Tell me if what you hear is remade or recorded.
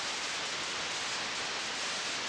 recorded